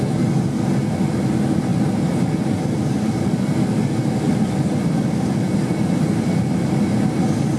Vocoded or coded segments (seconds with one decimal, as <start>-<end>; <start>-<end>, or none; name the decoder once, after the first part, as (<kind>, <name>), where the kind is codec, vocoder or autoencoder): none